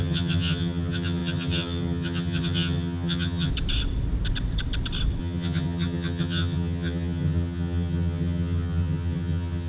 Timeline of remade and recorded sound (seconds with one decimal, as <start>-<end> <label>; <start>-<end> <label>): 0.0-3.5 remade; 3.5-5.2 recorded; 5.2-9.7 remade